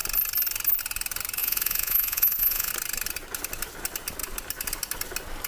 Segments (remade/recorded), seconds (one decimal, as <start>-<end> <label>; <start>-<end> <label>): 0.0-1.4 recorded; 1.4-2.7 remade; 2.7-5.5 recorded